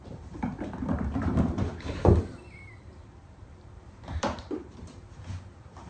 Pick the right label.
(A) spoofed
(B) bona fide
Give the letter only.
A